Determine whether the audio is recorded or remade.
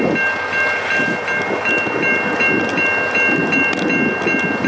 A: recorded